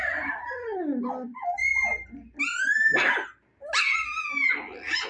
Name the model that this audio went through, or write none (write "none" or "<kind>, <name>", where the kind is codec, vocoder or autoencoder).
none